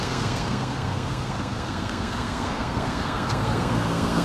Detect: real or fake fake